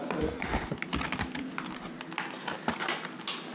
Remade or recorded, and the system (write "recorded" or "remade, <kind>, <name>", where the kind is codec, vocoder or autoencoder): recorded